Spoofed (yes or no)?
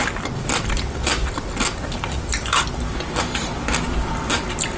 no